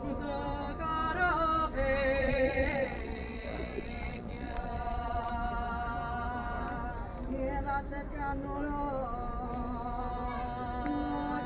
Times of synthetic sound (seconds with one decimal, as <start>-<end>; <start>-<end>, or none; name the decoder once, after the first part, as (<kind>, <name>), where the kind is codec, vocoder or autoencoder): 2.2-5.3 (vocoder, Vocos)